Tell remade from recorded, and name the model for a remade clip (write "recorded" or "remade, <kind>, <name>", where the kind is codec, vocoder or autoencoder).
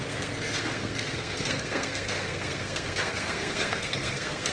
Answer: remade, codec, SNAC